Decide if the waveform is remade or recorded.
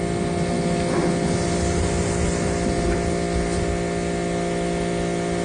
recorded